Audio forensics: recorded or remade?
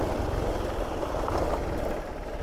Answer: recorded